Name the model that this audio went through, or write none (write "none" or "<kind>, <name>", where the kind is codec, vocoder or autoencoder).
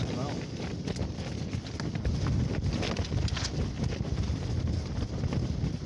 none